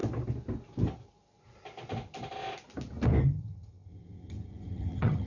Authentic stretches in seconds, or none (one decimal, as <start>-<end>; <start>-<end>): 0.0-3.2